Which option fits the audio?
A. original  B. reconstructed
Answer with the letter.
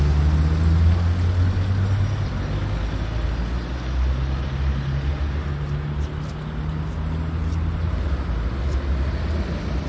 A